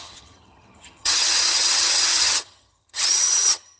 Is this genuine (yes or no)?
no